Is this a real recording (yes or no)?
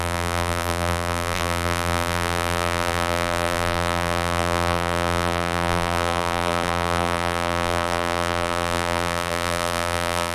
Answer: no